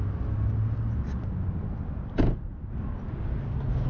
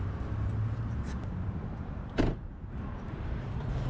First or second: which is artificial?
second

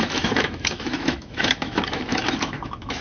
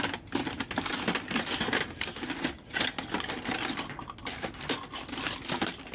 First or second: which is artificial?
first